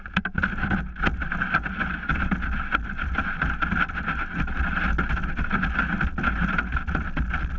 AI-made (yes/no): no